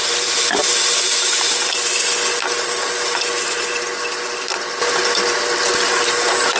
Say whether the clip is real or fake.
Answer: real